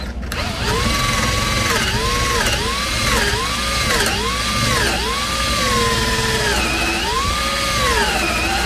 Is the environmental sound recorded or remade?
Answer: recorded